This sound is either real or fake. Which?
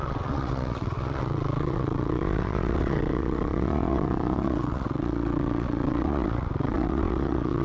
fake